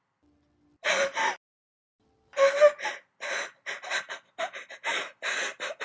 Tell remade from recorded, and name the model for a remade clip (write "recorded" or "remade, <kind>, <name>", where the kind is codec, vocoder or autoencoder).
recorded